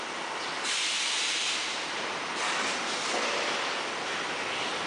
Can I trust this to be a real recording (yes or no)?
yes